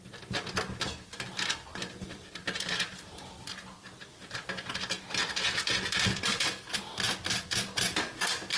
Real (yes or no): no